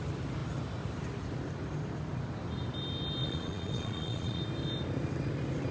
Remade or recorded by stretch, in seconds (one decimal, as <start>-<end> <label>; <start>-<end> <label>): 0.0-3.2 recorded; 3.2-4.4 remade; 4.4-5.7 recorded